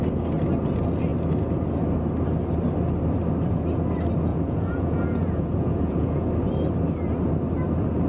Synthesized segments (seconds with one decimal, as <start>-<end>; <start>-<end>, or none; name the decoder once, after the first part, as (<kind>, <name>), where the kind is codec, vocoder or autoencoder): 4.3-6.3 (vocoder, Vocos)